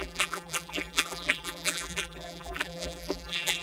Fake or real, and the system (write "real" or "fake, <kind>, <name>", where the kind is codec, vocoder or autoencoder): fake, vocoder, BigVGAN v2